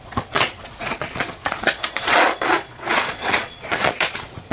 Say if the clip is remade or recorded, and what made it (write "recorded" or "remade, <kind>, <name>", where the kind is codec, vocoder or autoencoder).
remade, vocoder, Vocos